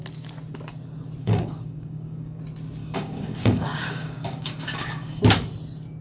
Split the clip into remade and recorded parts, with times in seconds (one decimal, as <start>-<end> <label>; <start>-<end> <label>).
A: 0.0-1.2 recorded; 1.2-2.4 remade; 2.4-2.8 recorded; 2.8-5.2 remade; 5.2-6.0 recorded